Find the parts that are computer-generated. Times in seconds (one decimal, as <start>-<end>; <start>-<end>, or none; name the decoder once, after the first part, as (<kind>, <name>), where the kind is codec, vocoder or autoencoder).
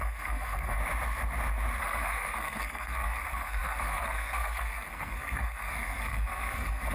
0.0-0.8 (codec, SNAC); 1.8-6.9